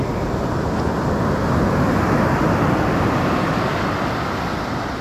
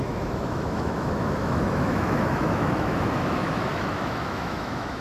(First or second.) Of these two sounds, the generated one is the second